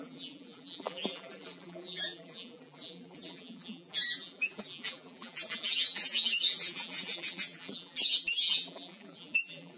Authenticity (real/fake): fake